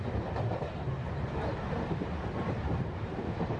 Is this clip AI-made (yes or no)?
no